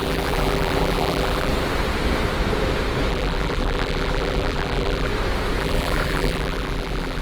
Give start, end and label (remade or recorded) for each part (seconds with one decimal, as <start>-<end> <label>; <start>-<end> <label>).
0.0-1.5 remade; 1.5-3.1 recorded; 3.1-5.1 remade; 5.1-5.6 recorded; 5.6-7.2 remade